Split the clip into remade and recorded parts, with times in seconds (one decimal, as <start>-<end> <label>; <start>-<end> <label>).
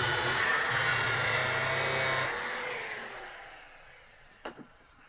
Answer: 0.0-1.4 remade; 1.4-2.5 recorded; 2.5-5.1 remade